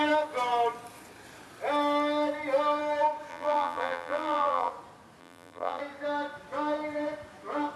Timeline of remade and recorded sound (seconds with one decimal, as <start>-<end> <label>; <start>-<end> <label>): 0.0-3.3 recorded; 3.3-4.7 remade; 4.7-5.2 recorded; 5.2-5.8 remade; 5.8-7.8 recorded